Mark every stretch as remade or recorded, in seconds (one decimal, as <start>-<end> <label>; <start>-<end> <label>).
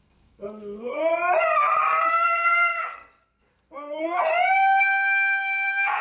0.0-1.1 remade; 1.1-2.1 recorded; 2.1-4.3 remade; 4.3-4.8 recorded; 4.8-6.0 remade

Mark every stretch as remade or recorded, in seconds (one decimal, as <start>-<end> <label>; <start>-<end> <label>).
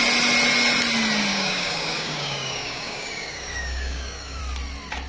0.0-1.3 recorded; 1.3-4.4 remade; 4.4-5.1 recorded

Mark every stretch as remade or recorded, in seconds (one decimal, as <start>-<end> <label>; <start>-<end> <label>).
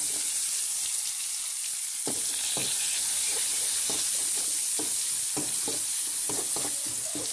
0.0-0.9 remade; 0.9-7.3 recorded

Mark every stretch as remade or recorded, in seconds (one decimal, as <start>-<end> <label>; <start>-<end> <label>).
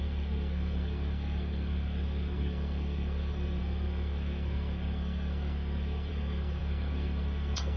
0.0-7.8 remade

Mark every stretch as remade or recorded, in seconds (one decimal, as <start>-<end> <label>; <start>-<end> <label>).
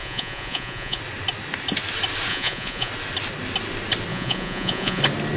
0.0-1.0 remade; 1.0-2.3 recorded; 2.3-2.9 remade; 2.9-4.1 recorded; 4.1-5.0 remade; 5.0-5.4 recorded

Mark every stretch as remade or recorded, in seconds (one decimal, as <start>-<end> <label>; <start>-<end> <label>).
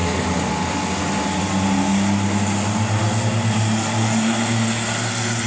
0.0-5.5 recorded